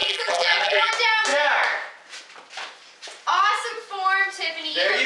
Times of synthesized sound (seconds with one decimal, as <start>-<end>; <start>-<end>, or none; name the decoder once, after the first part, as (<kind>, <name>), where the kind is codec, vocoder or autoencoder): 0.0-0.9 (vocoder, BigVGAN v2)